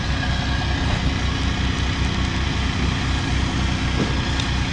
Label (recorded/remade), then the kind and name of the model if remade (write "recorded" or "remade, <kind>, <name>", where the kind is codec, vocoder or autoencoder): recorded